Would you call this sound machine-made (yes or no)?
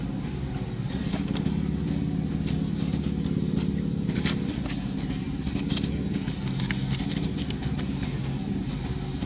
no